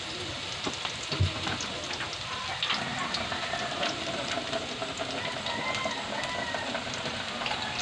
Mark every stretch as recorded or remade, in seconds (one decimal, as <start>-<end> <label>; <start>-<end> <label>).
0.0-2.9 recorded; 2.9-4.3 remade; 4.3-7.8 recorded